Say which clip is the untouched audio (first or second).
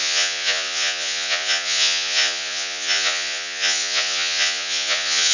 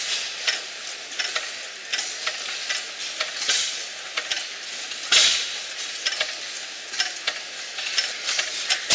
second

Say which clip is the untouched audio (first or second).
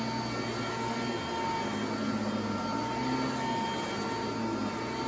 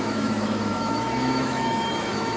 first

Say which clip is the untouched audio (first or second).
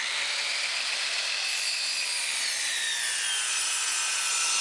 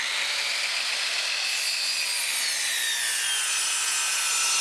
second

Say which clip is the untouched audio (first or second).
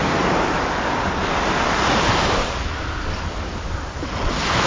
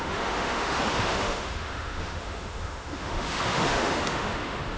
first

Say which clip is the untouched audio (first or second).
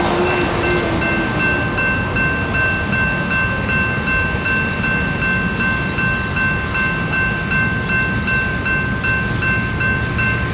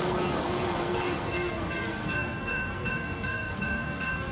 first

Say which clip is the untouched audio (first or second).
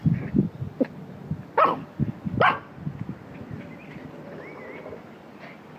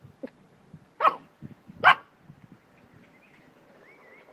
first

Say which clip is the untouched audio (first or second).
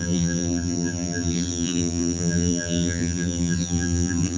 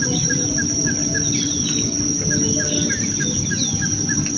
second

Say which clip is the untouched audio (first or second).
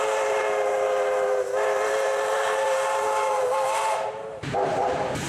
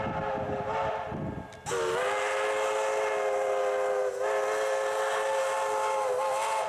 second